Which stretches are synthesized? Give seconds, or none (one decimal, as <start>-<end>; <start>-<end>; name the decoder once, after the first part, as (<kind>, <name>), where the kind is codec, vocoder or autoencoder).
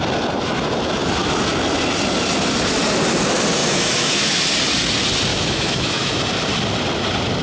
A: 3.6-4.4 (autoencoder, DAC-VAE); 5.3-6.2